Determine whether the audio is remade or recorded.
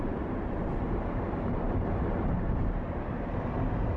remade